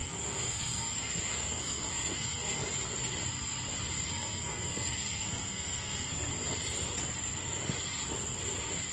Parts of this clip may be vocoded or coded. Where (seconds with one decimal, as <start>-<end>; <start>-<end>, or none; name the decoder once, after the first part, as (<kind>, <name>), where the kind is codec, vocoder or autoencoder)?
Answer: 0.0-2.6 (codec, SNAC); 4.1-6.3